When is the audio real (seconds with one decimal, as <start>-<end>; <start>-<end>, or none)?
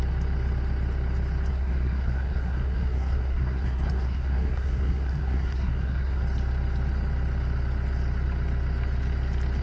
0.0-1.5; 6.2-9.6